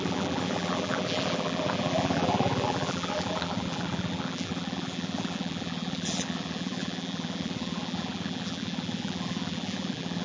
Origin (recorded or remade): remade